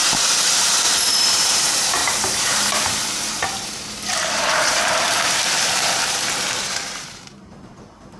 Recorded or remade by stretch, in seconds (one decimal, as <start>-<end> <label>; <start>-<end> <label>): 0.0-8.2 remade